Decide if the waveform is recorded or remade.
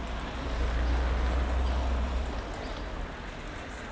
recorded